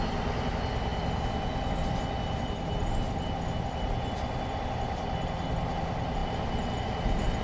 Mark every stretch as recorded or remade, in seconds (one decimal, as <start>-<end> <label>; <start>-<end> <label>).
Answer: 0.0-7.4 recorded